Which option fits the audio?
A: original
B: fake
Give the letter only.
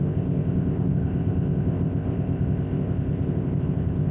B